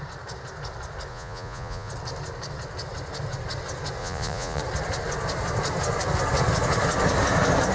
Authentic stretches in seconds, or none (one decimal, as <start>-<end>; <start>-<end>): 0.0-1.1; 1.9-4.0; 4.6-7.7

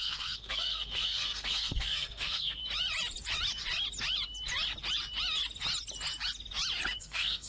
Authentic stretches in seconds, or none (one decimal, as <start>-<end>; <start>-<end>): 2.6-7.0